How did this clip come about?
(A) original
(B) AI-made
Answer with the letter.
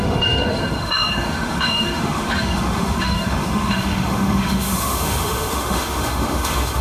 B